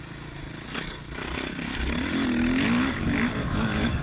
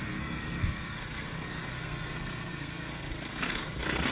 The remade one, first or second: second